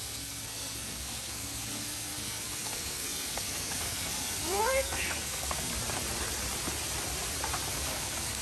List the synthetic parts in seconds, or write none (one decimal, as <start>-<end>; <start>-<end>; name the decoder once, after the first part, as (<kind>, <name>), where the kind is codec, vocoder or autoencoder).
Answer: 0.0-5.7 (codec, SNAC); 7.7-8.4